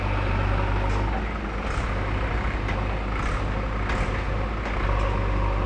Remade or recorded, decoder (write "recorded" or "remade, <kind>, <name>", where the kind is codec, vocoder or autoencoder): recorded